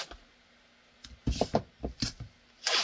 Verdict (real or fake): real